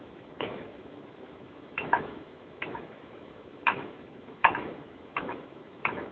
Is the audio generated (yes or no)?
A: yes